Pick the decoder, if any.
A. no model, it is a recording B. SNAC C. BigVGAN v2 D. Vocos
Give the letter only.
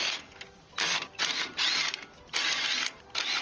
A